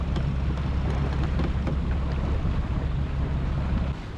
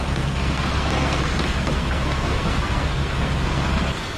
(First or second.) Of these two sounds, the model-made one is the second